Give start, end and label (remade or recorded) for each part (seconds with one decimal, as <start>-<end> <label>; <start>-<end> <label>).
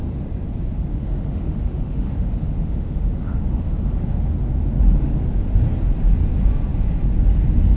0.0-0.9 recorded; 0.9-4.3 remade; 4.3-7.8 recorded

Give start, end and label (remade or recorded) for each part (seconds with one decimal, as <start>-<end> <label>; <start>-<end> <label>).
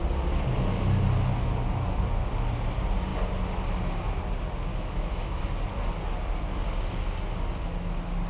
0.0-4.7 recorded; 4.7-5.4 remade; 5.4-8.3 recorded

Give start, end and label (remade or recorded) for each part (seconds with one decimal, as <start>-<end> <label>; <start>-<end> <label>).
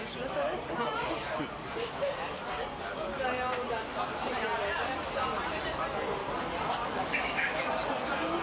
0.0-6.8 recorded; 6.8-7.7 remade; 7.7-8.4 recorded